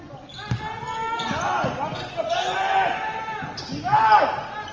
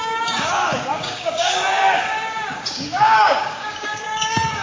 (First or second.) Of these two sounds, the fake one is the second